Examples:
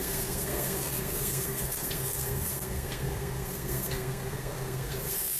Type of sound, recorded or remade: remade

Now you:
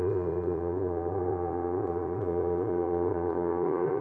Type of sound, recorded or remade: remade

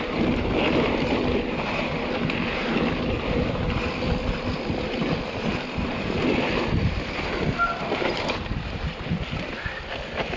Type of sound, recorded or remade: recorded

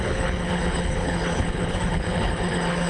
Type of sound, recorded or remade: remade